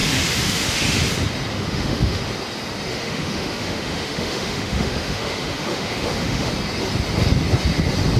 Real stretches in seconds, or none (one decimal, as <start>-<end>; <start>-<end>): 1.0-1.5; 2.2-2.9; 6.5-8.2